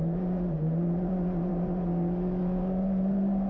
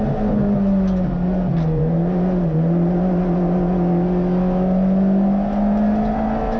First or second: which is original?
second